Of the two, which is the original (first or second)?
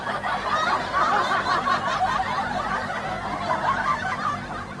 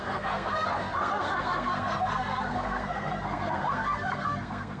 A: first